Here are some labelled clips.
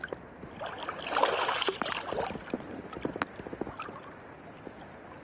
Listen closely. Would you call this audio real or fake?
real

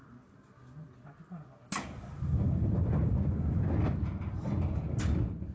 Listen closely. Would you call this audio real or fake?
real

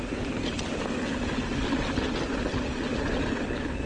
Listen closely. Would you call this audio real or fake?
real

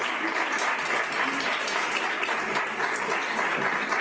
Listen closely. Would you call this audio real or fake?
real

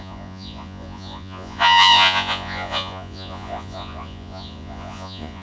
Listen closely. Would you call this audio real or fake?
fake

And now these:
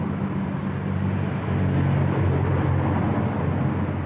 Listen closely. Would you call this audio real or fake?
real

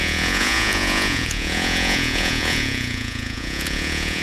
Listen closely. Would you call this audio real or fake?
fake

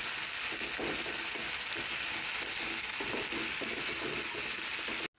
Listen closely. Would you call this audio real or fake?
real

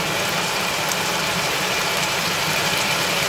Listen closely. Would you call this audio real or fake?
fake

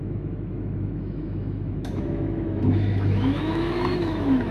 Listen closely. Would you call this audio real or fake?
fake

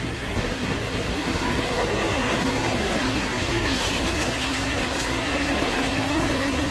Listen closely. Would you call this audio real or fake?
fake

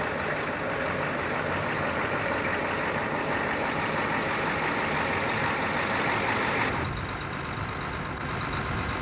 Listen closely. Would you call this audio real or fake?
real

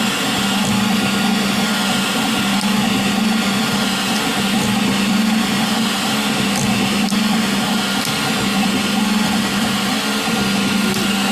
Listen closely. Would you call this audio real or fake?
real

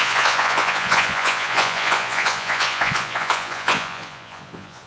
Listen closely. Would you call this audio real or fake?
fake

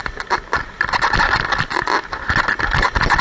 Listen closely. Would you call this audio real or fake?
real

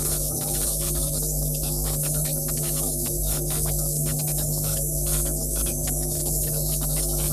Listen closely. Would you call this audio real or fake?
fake